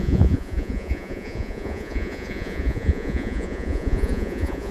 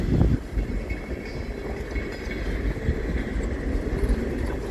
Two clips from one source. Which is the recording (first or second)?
second